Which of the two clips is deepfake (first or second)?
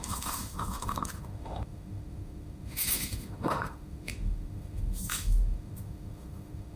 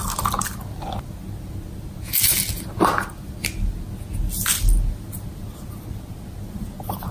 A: first